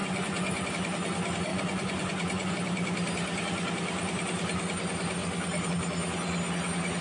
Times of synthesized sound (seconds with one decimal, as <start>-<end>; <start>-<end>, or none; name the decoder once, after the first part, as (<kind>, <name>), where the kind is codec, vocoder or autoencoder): 0.0-0.7 (vocoder, Vocos); 1.5-2.5